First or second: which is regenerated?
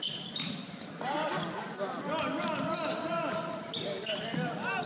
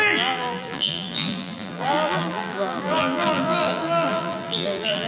second